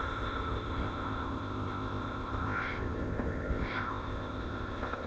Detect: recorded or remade remade